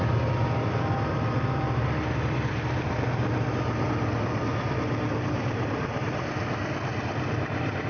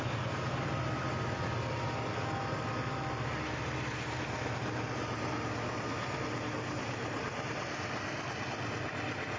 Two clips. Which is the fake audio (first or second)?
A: first